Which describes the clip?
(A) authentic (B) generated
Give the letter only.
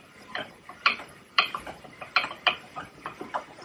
B